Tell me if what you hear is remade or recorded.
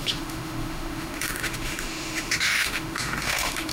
remade